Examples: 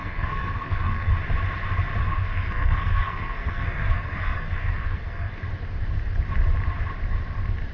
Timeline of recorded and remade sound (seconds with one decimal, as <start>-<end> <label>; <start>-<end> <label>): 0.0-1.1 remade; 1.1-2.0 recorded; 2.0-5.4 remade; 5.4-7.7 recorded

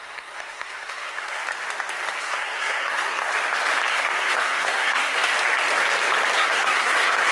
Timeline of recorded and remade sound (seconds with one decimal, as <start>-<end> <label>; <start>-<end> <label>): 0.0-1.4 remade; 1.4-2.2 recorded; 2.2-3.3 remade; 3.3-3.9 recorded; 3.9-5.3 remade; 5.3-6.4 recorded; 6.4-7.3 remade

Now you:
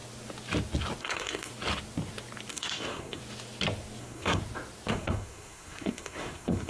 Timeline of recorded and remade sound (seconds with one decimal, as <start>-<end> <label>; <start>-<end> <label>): 0.0-1.0 recorded; 1.0-1.5 remade; 1.5-2.5 recorded; 2.5-3.2 remade; 3.2-4.0 recorded; 4.0-4.4 remade; 4.4-4.9 recorded; 4.9-6.7 remade

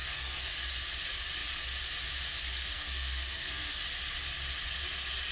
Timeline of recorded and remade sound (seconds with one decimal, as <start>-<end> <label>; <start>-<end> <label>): 0.0-0.5 remade; 0.5-2.6 recorded; 2.6-3.7 remade; 3.7-5.3 recorded